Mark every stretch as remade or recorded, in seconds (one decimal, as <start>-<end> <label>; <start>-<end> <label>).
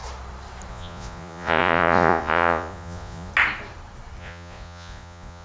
0.0-0.7 recorded; 0.7-3.3 remade; 3.3-4.2 recorded; 4.2-5.4 remade